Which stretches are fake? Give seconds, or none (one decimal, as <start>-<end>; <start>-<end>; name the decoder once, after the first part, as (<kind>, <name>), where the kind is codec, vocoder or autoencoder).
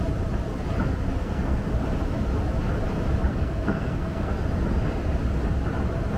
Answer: 1.2-1.7 (codec, SNAC); 3.3-4.3